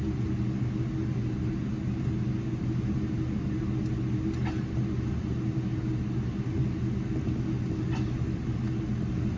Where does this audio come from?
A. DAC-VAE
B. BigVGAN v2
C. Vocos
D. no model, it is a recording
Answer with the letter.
D